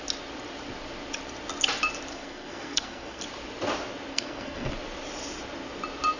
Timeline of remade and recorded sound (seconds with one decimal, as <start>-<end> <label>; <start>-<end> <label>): 0.0-2.1 recorded; 2.1-3.2 remade; 3.2-4.1 recorded; 4.1-4.7 remade; 4.7-6.2 recorded